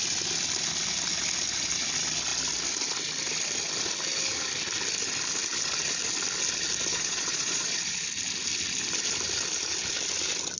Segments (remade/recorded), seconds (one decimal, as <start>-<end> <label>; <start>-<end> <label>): 0.0-6.9 recorded; 6.9-7.7 remade; 7.7-10.6 recorded

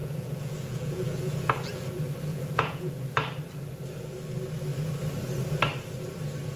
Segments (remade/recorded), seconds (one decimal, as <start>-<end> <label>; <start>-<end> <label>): 0.0-1.9 remade; 1.9-2.3 recorded; 2.3-2.9 remade; 2.9-6.6 recorded

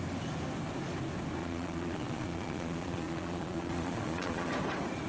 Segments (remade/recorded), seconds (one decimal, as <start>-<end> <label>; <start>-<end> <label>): 0.0-1.4 recorded; 1.4-4.5 remade; 4.5-5.1 recorded

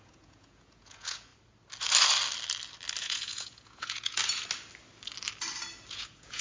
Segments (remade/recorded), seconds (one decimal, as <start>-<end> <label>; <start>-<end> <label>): 0.0-1.3 remade; 1.3-3.0 recorded; 3.0-4.2 remade; 4.2-5.9 recorded; 5.9-6.4 remade